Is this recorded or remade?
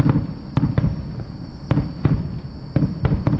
recorded